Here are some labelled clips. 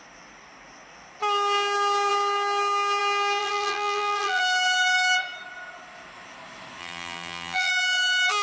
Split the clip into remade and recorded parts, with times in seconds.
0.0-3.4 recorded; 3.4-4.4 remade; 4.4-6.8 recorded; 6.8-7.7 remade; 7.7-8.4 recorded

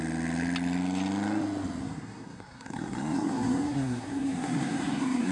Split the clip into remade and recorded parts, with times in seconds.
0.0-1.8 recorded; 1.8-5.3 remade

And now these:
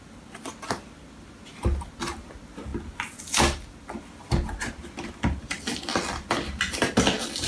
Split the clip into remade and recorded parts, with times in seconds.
0.0-7.5 recorded

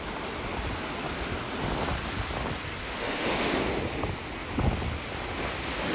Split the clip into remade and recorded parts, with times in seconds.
0.0-2.8 recorded; 2.8-3.6 remade; 3.6-5.9 recorded

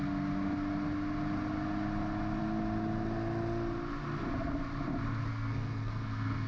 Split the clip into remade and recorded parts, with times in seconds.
0.0-5.3 recorded; 5.3-6.5 remade